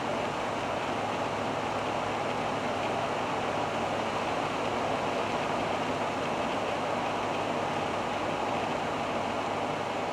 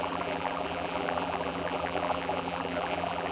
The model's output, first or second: second